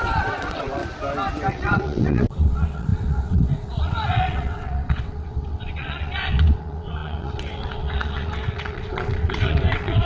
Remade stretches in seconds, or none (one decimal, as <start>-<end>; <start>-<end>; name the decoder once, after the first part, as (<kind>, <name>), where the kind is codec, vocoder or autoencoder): 0.0-0.8 (vocoder, WaveNeXt); 1.5-10.1